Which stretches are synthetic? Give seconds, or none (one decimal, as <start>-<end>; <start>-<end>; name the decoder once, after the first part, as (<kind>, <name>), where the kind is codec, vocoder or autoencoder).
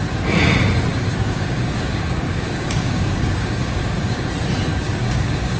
0.9-4.3 (codec, DAC); 4.7-5.6